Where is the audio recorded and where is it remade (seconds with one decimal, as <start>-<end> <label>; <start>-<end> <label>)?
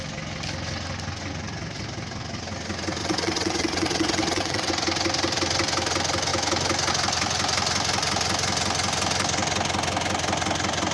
0.0-3.0 recorded; 3.0-4.7 remade; 4.7-10.9 recorded